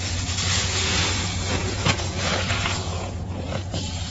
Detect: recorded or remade remade